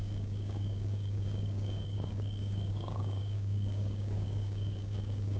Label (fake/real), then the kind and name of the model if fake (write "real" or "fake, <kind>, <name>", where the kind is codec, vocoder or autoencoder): fake, codec, DAC